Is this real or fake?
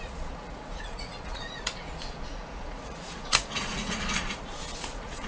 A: fake